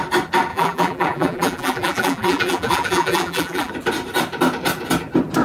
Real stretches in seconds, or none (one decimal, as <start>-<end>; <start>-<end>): 0.0-0.5; 3.7-5.4